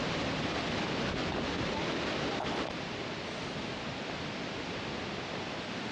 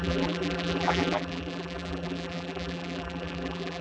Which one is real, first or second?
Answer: first